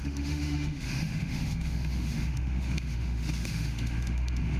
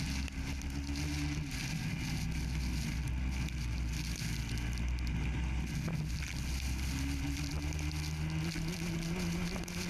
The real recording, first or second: second